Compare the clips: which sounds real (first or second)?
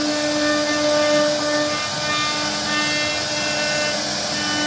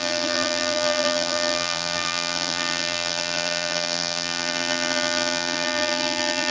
first